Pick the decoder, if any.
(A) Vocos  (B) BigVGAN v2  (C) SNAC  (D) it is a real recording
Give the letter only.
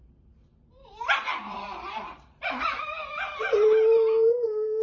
B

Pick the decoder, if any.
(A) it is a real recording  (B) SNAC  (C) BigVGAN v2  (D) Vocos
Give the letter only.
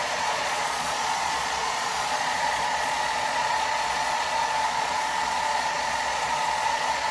D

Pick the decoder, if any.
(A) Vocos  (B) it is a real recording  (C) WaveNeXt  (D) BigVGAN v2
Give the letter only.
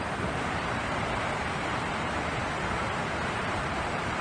D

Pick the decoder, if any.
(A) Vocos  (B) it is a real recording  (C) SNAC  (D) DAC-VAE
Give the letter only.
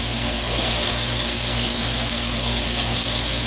C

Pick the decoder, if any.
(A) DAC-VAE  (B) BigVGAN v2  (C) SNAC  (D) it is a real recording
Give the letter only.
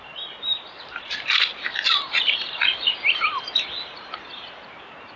B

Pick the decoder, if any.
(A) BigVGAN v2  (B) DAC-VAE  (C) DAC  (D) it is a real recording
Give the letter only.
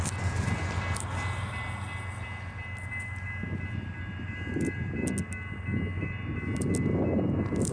D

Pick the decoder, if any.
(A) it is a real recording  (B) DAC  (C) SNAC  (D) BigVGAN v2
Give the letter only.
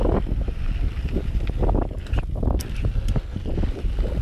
A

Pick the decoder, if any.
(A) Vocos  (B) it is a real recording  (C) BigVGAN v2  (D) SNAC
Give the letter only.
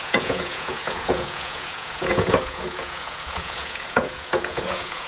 A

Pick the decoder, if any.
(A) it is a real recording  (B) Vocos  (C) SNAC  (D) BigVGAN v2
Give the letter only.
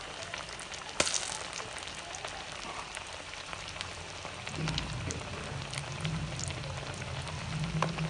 A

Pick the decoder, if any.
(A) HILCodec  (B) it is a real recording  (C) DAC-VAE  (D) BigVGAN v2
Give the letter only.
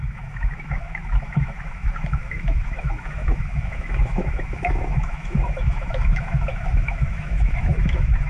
C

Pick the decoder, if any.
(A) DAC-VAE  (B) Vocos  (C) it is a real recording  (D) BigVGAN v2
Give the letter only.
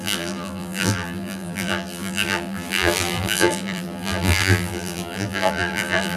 D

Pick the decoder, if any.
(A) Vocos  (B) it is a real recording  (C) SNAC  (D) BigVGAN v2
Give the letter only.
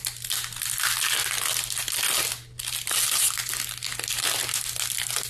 B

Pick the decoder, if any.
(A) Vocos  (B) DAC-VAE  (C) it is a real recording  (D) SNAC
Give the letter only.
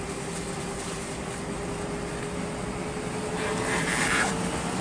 C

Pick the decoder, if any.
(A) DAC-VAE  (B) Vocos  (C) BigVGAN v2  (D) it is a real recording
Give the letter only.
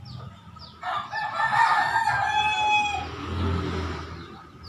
D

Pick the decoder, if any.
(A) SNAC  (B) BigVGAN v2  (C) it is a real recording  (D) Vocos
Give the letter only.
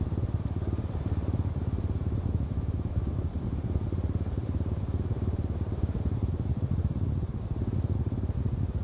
B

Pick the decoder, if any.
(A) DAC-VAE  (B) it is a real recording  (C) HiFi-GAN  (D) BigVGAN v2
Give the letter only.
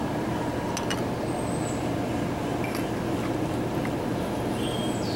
B